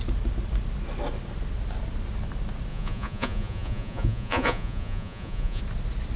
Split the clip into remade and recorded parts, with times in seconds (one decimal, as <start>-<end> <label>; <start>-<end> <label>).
0.0-2.7 recorded; 2.7-5.6 remade; 5.6-6.2 recorded